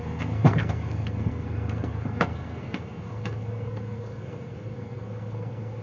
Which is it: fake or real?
fake